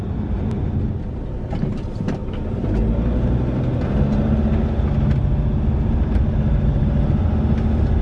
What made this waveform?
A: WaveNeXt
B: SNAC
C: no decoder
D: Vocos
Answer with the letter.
C